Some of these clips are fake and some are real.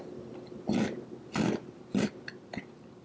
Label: real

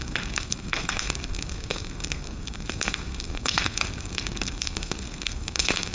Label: fake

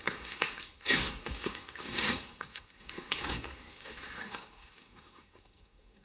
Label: fake